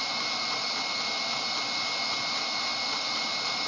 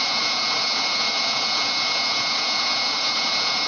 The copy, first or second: second